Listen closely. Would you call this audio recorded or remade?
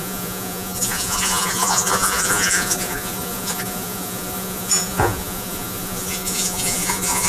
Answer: remade